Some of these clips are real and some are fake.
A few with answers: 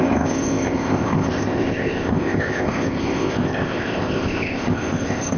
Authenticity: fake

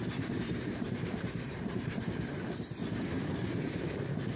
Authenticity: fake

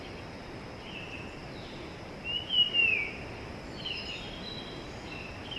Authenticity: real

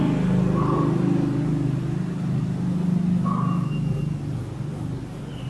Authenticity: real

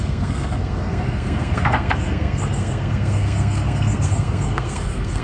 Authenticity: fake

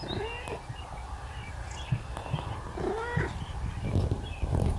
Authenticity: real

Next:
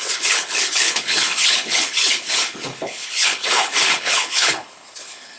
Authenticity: fake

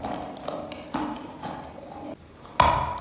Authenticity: real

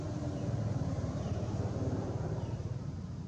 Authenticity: fake